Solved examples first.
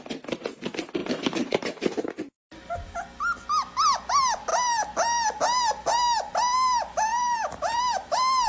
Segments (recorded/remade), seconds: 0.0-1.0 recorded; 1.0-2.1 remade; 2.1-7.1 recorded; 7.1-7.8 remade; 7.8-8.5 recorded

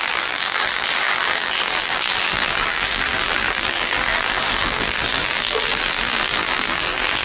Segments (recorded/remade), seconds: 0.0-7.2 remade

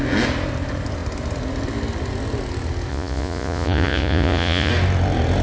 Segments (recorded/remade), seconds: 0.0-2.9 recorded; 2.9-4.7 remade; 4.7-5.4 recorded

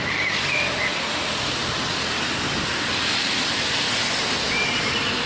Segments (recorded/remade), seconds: 0.0-5.3 recorded

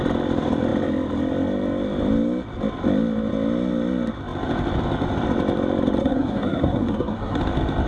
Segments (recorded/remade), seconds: 0.0-6.0 recorded; 6.0-7.4 remade; 7.4-7.9 recorded

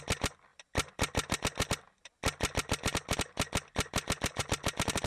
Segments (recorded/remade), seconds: 0.0-5.1 recorded

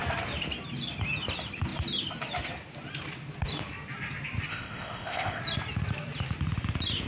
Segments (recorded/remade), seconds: 0.0-4.5 recorded; 4.5-5.4 remade; 5.4-7.1 recorded

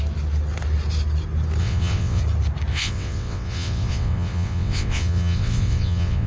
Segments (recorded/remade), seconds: 0.0-1.6 recorded; 1.6-2.2 remade; 2.2-2.7 recorded; 2.7-6.3 remade